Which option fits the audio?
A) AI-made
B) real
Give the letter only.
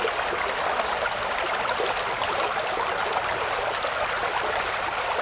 B